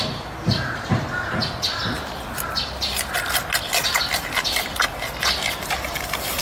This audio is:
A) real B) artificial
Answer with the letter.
A